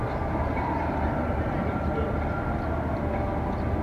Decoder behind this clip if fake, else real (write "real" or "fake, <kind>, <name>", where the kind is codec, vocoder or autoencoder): real